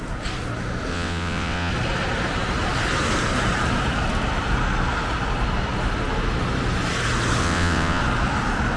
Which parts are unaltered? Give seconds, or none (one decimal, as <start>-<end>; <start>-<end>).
0.0-0.9; 1.7-7.4; 8.0-8.8